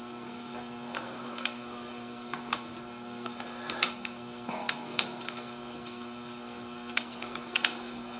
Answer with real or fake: fake